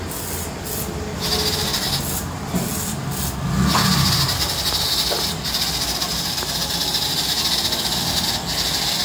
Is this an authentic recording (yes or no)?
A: yes